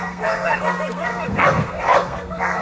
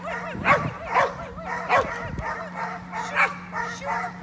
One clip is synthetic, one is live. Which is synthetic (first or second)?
first